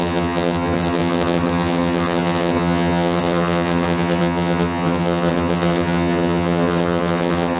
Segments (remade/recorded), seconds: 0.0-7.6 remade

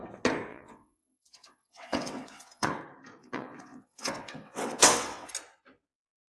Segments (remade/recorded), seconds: 0.0-0.5 recorded; 0.5-2.8 remade; 2.8-3.2 recorded; 3.2-5.3 remade; 5.3-6.4 recorded

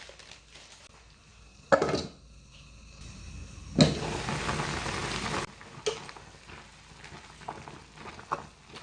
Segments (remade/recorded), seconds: 0.0-8.8 recorded